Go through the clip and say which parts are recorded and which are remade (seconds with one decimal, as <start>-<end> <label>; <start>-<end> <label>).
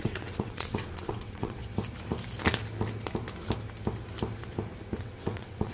0.0-1.6 remade; 1.6-5.0 recorded; 5.0-5.7 remade